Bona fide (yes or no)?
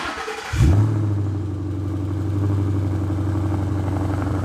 yes